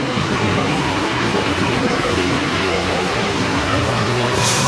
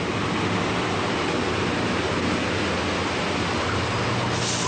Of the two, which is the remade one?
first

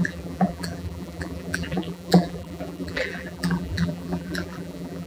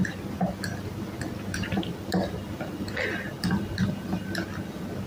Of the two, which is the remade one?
first